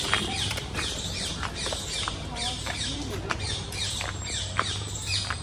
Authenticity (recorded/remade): remade